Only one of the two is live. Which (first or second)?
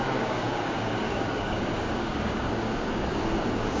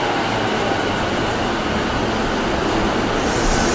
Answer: second